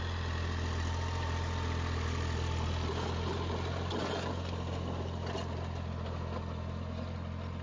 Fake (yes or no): no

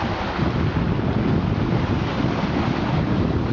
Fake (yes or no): no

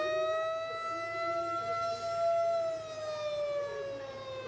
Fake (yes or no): no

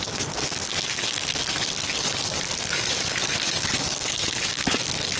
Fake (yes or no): yes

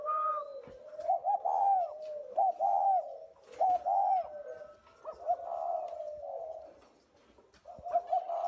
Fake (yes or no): no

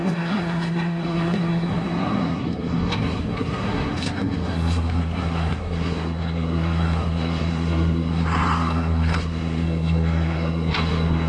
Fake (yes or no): yes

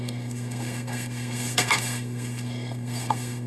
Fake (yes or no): yes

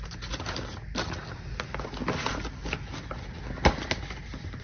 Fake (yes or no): no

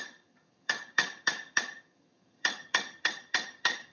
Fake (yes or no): yes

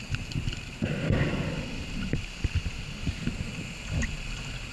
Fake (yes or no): no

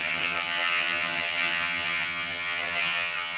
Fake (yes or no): yes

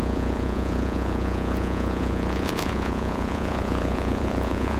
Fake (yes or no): yes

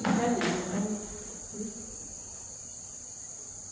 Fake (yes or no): no